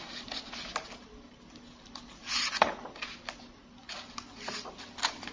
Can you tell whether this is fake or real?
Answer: real